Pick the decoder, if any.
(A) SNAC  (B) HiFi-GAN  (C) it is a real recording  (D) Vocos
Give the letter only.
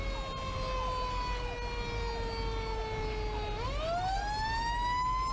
C